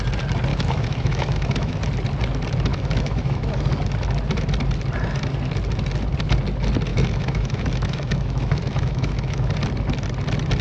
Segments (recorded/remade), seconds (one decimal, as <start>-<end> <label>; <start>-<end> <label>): 0.0-0.5 recorded; 0.5-1.8 remade; 1.8-2.7 recorded; 2.7-3.5 remade; 3.5-6.9 recorded; 6.9-9.5 remade; 9.5-10.6 recorded